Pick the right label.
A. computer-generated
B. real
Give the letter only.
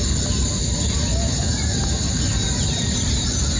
B